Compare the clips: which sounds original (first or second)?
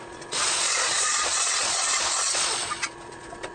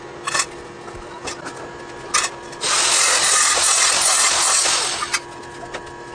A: second